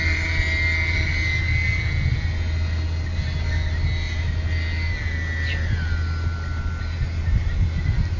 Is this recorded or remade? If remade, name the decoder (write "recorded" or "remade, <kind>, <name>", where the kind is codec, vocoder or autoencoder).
recorded